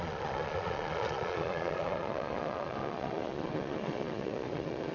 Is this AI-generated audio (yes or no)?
yes